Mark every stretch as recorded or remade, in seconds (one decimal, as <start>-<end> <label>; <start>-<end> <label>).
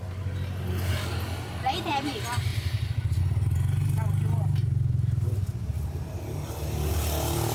0.0-2.5 recorded; 2.5-3.2 remade; 3.2-4.6 recorded; 4.6-6.1 remade; 6.1-7.5 recorded